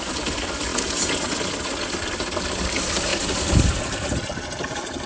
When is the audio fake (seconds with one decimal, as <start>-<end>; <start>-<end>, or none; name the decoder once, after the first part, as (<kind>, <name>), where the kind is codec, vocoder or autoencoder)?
0.0-0.7 (vocoder, BigVGAN v2); 1.9-5.1